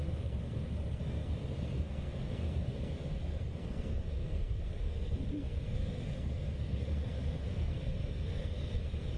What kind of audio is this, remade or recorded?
remade